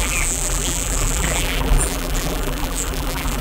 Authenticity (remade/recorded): remade